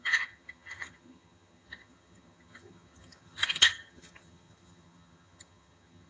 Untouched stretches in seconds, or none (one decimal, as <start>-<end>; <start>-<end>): none